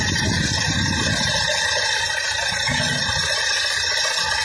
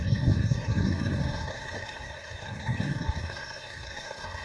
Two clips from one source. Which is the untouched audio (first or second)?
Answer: first